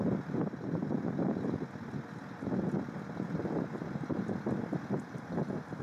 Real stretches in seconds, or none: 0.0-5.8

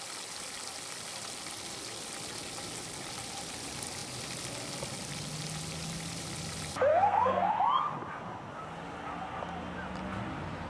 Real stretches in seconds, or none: 0.0-6.9; 7.5-10.7

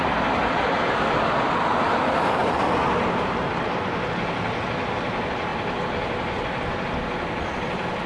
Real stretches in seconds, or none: 0.0-8.1

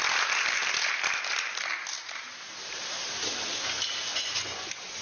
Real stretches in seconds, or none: 0.0-4.1

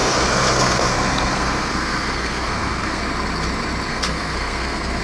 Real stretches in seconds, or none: 3.0-3.9

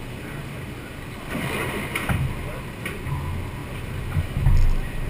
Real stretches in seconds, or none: 0.0-3.6